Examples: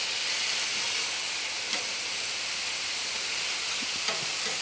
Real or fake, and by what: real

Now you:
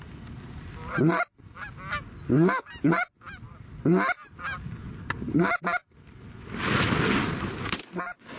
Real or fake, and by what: real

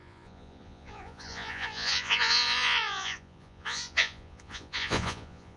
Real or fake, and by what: fake, vocoder, Vocos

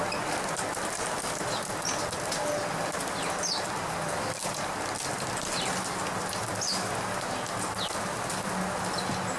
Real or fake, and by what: real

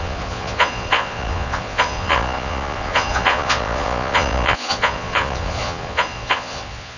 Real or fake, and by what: fake, vocoder, Vocos